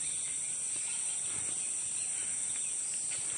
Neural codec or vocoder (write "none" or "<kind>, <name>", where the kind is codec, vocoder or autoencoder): none